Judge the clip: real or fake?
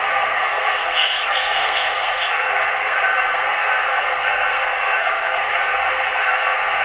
fake